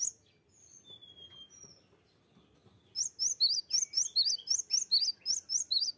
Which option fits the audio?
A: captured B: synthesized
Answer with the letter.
A